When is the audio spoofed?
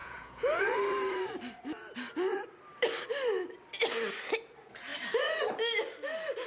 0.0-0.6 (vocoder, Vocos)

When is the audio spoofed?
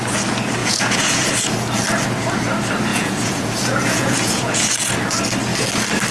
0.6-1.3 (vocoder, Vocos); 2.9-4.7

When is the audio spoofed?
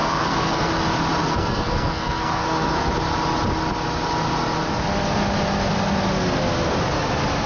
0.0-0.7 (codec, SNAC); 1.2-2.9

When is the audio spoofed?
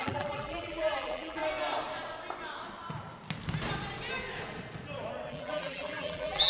0.0-1.4 (vocoder, BigVGAN v2); 5.3-6.5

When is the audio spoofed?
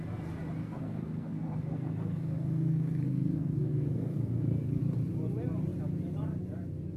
0.6-4.8 (codec, SNAC)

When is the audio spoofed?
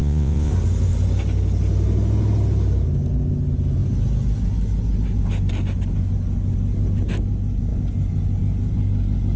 0.0-0.5 (vocoder, Vocos)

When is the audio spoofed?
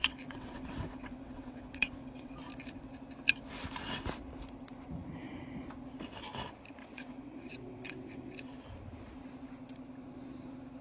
0.0-2.3 (vocoder, WaveNeXt); 6.8-7.9